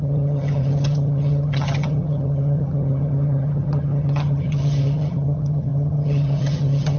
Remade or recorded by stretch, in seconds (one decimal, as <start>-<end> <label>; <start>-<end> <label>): 0.0-7.0 remade